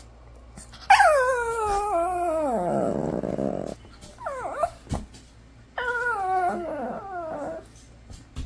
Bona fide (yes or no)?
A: yes